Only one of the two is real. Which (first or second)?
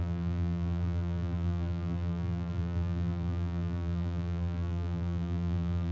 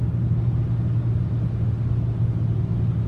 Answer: second